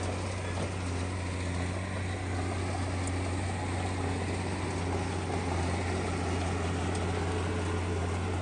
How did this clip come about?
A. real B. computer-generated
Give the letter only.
A